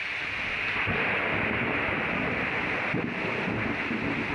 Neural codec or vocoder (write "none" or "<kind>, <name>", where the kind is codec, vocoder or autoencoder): none